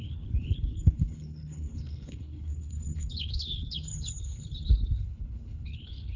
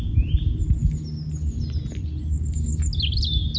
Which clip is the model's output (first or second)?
first